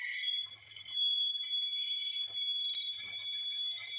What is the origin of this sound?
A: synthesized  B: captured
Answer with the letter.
B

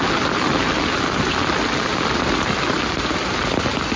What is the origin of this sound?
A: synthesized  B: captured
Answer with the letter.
B